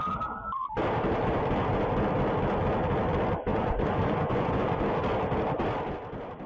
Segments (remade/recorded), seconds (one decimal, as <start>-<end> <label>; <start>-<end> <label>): 0.0-3.5 recorded; 3.5-4.8 remade; 4.8-6.5 recorded